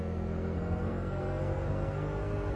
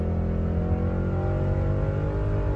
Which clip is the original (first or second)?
second